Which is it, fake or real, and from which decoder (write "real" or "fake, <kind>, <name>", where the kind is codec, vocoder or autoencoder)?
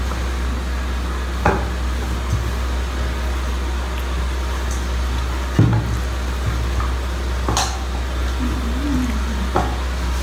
real